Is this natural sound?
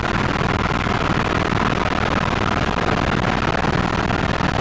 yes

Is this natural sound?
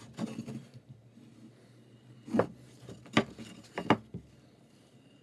yes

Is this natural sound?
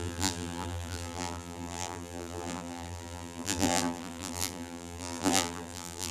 no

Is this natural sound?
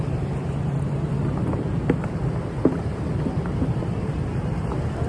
yes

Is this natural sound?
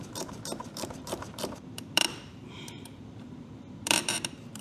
no